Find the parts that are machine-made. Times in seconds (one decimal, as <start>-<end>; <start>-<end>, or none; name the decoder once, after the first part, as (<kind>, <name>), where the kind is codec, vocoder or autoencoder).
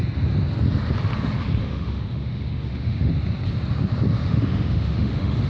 1.6-3.1 (autoencoder, DAC-VAE); 4.2-5.5